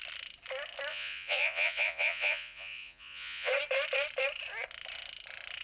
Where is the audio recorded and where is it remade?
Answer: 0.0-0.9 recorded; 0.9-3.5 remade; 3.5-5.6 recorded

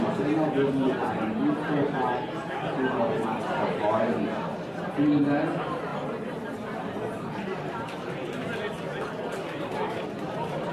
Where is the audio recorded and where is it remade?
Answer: 0.0-10.7 recorded

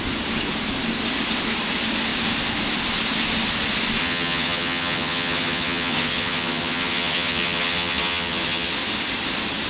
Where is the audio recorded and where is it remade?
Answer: 0.0-4.0 recorded; 4.0-8.7 remade; 8.7-9.7 recorded

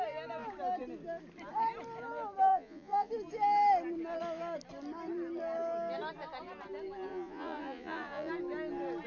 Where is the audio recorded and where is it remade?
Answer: 0.0-2.5 recorded; 2.5-3.1 remade; 3.1-7.1 recorded; 7.1-8.3 remade; 8.3-9.1 recorded

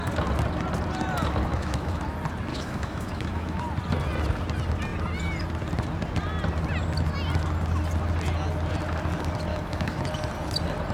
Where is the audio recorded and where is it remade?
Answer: 0.0-1.5 recorded; 1.5-2.0 remade; 2.0-2.5 recorded; 2.5-3.6 remade; 3.6-9.5 recorded; 9.5-10.0 remade; 10.0-10.9 recorded

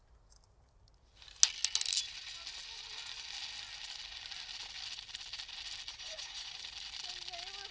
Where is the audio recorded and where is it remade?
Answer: 0.0-5.9 recorded; 5.9-6.6 remade; 6.6-7.7 recorded

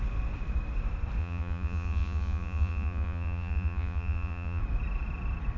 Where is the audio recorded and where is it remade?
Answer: 0.0-1.2 recorded; 1.2-4.6 remade; 4.6-5.6 recorded

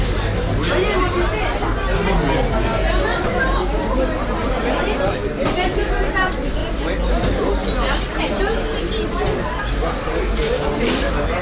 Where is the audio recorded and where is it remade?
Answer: 0.0-11.4 recorded